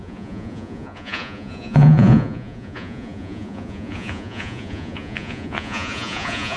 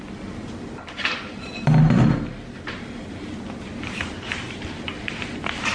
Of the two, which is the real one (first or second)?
second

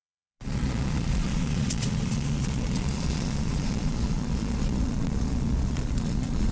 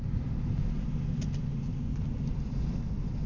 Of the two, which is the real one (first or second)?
second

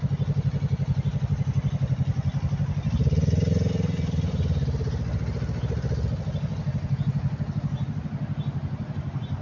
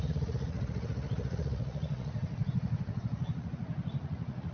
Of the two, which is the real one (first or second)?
first